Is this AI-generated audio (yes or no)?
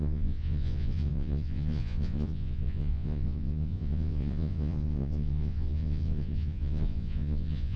yes